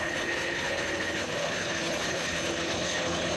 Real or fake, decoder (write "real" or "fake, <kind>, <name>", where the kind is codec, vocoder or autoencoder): fake, codec, HILCodec